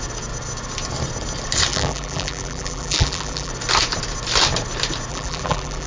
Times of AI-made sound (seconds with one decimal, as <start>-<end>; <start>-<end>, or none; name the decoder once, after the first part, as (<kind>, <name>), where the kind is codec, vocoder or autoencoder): 1.7-3.5 (vocoder, BigVGAN v2); 5.1-5.9